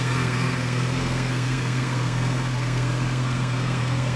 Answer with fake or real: fake